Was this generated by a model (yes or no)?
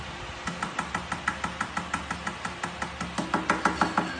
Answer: no